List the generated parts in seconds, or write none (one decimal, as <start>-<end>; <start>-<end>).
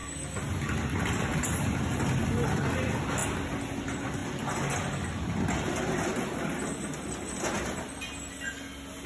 none